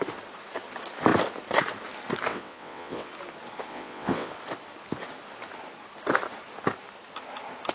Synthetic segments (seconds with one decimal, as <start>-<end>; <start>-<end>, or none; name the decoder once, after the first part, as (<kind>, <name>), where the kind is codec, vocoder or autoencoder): 2.3-3.1 (vocoder, WaveNeXt); 3.7-4.3